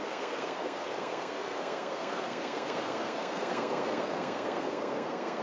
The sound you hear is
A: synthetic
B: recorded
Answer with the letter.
A